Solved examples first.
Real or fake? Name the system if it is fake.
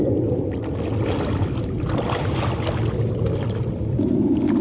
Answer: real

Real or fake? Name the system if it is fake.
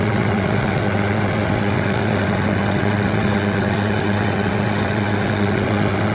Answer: fake, vocoder, WaveNeXt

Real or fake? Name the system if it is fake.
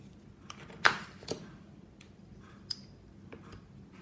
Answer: real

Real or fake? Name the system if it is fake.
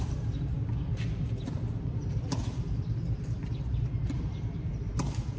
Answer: real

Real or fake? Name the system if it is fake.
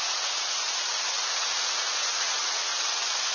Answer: fake, vocoder, Vocos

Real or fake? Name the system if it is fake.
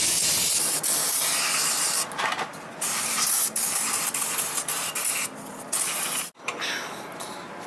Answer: real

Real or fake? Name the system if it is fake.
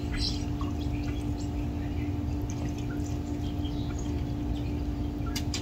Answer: real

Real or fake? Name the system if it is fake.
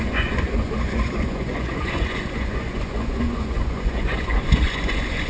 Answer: fake, vocoder, Vocos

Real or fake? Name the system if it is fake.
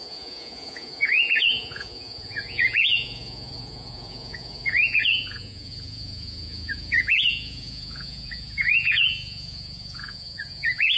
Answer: fake, vocoder, Vocos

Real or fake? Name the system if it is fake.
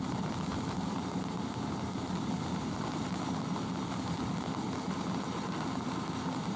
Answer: real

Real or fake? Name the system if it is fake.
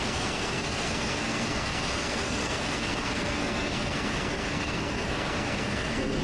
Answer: fake, codec, SNAC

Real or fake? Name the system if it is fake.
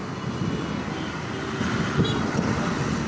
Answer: real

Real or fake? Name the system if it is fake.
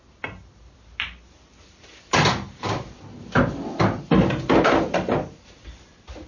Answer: real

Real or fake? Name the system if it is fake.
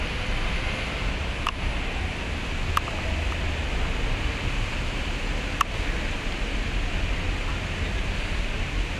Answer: real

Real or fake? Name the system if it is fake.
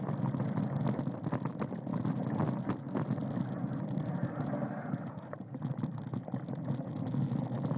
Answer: real